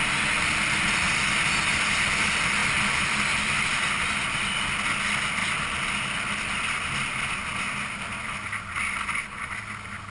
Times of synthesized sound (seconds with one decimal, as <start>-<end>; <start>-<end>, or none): none